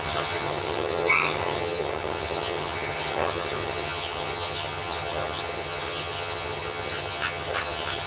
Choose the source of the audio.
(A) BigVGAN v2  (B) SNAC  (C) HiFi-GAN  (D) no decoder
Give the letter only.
C